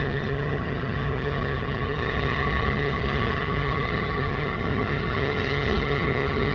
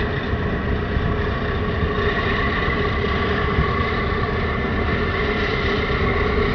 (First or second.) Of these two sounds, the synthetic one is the first